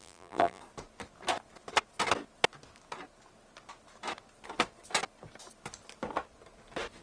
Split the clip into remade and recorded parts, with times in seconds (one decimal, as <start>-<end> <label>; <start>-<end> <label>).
0.0-0.6 remade; 0.6-7.0 recorded